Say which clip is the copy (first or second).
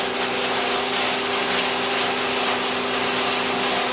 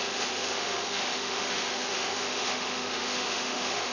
second